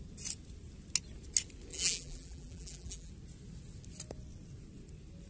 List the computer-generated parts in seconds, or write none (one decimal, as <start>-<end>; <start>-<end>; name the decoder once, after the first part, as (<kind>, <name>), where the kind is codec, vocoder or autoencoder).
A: 1.7-3.1 (vocoder, BigVGAN v2)